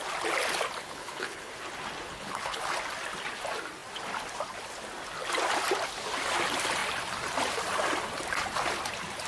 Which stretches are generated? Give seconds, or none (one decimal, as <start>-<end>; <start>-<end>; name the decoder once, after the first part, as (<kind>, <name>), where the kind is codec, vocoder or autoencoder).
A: 0.8-1.5 (codec, HILCodec); 2.1-2.6